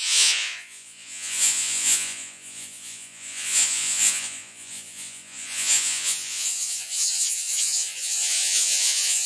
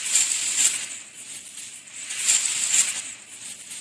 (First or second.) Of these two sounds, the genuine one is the second